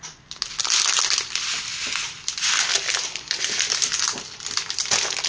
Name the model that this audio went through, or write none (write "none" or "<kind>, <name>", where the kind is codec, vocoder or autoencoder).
none